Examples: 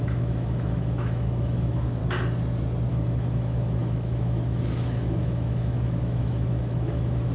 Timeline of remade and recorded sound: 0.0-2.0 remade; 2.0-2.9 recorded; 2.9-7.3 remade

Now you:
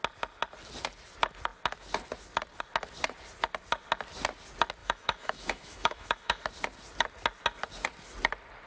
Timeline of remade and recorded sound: 0.0-4.8 recorded; 4.8-6.4 remade; 6.4-8.7 recorded

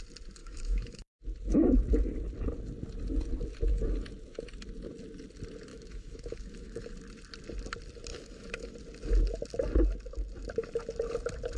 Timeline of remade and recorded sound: 0.0-0.4 recorded; 0.4-1.2 remade; 1.2-5.7 recorded; 5.7-6.9 remade; 6.9-8.1 recorded; 8.1-8.7 remade; 8.7-11.6 recorded

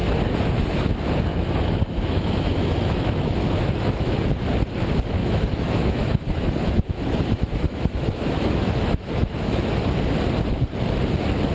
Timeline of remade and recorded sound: 0.0-1.3 recorded; 1.3-4.2 remade; 4.2-5.2 recorded; 5.2-9.8 remade; 9.8-11.5 recorded

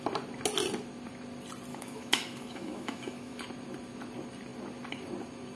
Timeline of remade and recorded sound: 0.0-1.7 recorded; 1.7-3.4 remade; 3.4-5.6 recorded

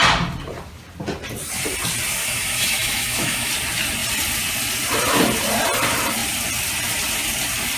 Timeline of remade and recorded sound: 0.0-2.2 recorded; 2.2-3.5 remade; 3.5-7.8 recorded

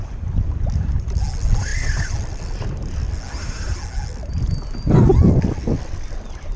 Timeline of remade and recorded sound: 0.0-6.6 recorded

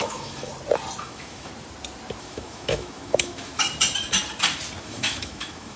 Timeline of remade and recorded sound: 0.0-0.5 remade; 0.5-1.0 recorded; 1.0-1.5 remade; 1.5-2.2 recorded; 2.2-3.5 remade; 3.5-4.8 recorded; 4.8-5.8 remade